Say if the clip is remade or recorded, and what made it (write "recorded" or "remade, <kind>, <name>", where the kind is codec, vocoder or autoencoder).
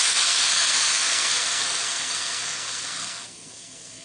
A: remade, codec, SNAC